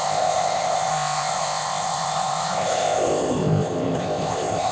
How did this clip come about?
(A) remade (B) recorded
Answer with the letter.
A